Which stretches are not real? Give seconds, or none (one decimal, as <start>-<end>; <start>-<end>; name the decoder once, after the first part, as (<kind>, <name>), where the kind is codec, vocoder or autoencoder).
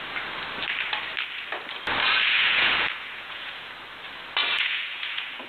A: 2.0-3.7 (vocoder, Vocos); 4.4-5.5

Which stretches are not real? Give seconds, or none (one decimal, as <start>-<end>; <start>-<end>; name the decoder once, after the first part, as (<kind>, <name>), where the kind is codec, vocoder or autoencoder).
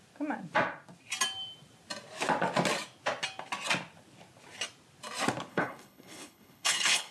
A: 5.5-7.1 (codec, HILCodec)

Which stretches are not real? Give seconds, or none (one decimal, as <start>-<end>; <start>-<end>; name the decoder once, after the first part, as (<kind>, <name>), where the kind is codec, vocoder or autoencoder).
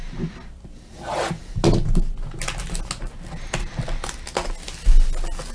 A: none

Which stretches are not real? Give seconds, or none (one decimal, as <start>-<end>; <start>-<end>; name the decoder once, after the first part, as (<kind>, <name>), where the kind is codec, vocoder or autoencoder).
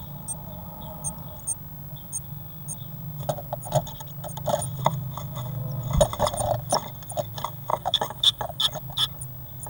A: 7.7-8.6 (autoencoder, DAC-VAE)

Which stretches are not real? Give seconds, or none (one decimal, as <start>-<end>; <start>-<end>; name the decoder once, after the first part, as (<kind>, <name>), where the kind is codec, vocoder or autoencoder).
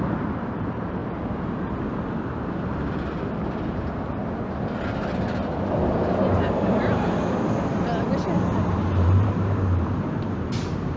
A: 0.0-1.0 (vocoder, BigVGAN v2); 2.3-4.2; 8.9-11.0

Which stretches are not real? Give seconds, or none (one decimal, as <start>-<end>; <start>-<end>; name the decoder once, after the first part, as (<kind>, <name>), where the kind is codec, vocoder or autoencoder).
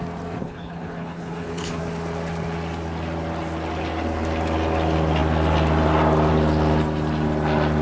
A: 0.4-1.8 (codec, HILCodec)